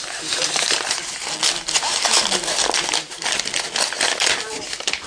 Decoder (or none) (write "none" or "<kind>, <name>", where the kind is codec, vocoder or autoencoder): none